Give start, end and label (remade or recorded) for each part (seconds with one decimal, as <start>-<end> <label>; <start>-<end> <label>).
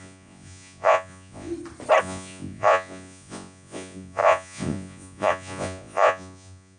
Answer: 0.0-1.5 remade; 1.5-2.0 recorded; 2.0-6.8 remade